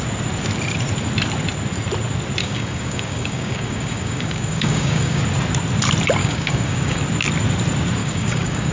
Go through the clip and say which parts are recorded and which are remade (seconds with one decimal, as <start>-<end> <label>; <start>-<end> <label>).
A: 0.0-2.4 recorded; 2.4-5.2 remade; 5.2-6.2 recorded; 6.2-7.0 remade; 7.0-8.0 recorded; 8.0-8.7 remade